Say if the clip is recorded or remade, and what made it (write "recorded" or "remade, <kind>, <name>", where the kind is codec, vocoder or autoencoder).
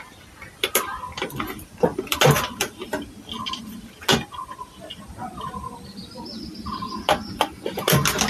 recorded